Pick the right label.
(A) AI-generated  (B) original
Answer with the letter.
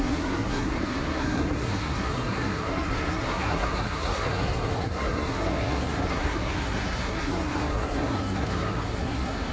A